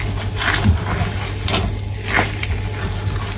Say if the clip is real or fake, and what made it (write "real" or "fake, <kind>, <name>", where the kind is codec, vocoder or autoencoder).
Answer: real